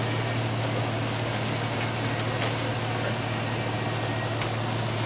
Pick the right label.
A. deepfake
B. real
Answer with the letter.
B